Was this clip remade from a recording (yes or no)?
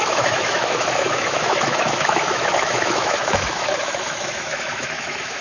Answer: yes